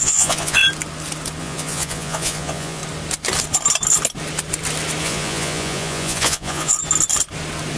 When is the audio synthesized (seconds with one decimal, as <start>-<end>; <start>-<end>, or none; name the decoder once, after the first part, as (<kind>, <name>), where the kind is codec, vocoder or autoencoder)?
0.0-0.6 (vocoder, Vocos); 1.4-2.8; 5.0-6.7